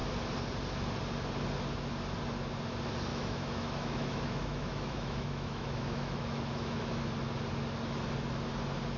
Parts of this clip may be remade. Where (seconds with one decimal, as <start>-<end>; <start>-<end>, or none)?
3.1-7.1

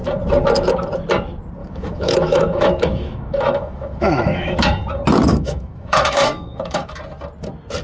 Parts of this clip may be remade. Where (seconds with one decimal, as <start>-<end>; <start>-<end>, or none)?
1.6-4.6; 5.3-7.0

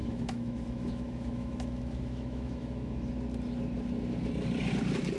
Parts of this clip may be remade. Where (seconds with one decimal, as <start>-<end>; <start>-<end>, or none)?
0.0-3.1

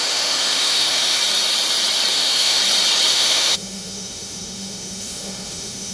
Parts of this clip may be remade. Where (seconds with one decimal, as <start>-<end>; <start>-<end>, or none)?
0.0-1.2; 2.1-2.6; 3.1-5.9

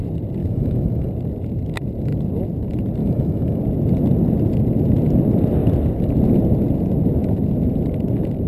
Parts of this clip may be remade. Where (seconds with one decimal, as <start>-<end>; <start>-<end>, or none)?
0.4-1.1; 3.0-3.6

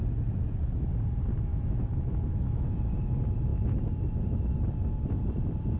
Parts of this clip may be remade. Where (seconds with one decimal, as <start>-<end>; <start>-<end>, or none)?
1.5-2.9

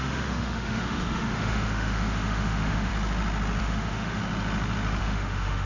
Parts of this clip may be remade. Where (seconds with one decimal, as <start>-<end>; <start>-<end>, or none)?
0.0-2.9; 3.6-4.2; 5.0-5.7

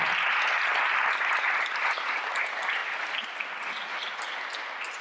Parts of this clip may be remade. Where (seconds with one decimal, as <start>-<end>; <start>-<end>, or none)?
none